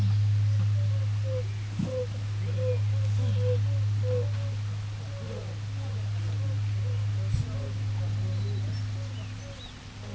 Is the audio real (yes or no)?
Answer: yes